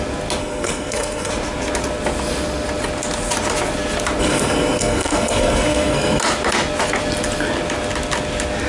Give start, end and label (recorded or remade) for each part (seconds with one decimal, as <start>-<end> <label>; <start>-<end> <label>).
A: 0.0-0.4 recorded; 0.4-1.3 remade; 1.3-4.2 recorded; 4.2-6.2 remade; 6.2-8.7 recorded